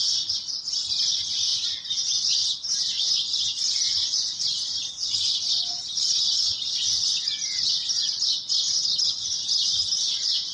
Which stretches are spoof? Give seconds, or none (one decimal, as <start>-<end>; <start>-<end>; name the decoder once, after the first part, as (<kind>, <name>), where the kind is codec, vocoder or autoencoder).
none